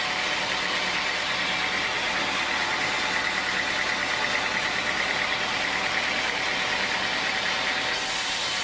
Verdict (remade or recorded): recorded